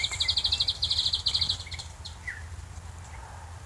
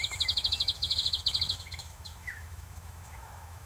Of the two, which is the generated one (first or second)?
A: second